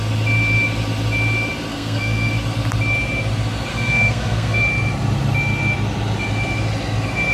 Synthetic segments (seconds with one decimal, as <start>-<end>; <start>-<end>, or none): 1.7-2.3; 3.7-4.6